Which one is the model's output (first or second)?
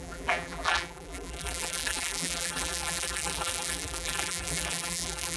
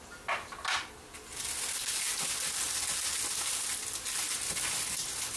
first